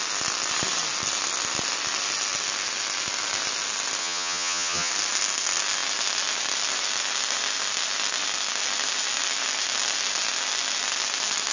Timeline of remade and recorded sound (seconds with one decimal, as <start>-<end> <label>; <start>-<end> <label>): 0.0-4.0 recorded; 4.0-4.9 remade; 4.9-11.5 recorded